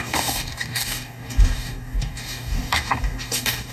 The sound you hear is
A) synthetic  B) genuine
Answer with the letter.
A